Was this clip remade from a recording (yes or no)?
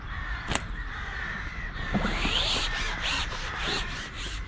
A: no